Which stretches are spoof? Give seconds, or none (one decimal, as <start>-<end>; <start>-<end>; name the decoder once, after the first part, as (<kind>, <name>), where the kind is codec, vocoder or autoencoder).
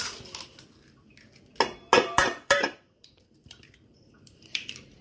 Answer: 1.8-5.0 (vocoder, BigVGAN v2)